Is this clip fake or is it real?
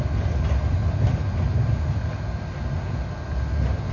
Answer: real